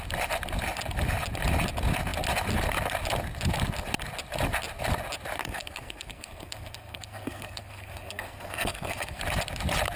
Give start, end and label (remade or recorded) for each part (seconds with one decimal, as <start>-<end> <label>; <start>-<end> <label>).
0.0-5.4 recorded; 5.4-9.2 remade; 9.2-10.0 recorded